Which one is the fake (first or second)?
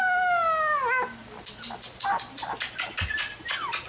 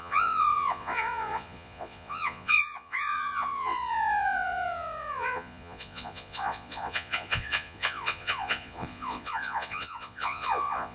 second